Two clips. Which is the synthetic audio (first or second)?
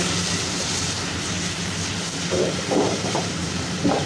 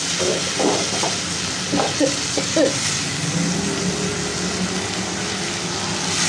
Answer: first